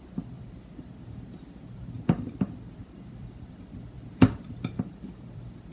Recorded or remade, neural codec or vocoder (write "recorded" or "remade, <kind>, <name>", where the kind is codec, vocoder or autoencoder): remade, vocoder, BigVGAN v2